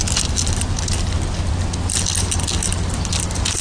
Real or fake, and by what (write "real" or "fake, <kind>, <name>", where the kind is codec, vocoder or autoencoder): real